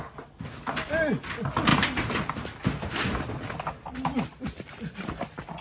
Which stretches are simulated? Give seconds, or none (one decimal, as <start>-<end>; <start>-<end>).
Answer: 4.3-5.6